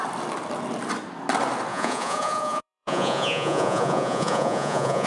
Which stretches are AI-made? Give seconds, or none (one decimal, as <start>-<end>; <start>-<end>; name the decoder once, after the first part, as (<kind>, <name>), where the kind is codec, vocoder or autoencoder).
1.7-5.1 (vocoder, Vocos)